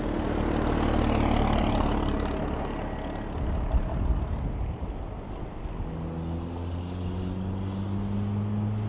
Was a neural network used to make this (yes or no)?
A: no